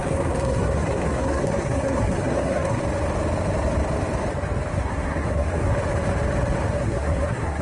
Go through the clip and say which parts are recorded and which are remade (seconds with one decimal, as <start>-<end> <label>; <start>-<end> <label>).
0.0-2.8 remade; 2.8-4.7 recorded; 4.7-5.7 remade; 5.7-6.7 recorded; 6.7-7.6 remade